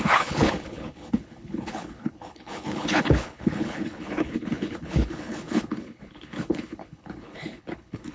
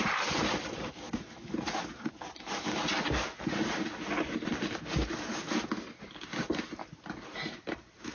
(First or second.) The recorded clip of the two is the second